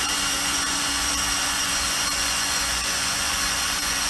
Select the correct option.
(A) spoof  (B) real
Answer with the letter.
A